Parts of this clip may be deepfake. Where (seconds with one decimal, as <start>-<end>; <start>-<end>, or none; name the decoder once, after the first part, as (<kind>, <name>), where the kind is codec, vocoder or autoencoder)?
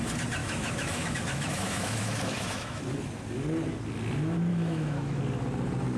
0.4-2.8 (autoencoder, DAC-VAE); 4.5-5.2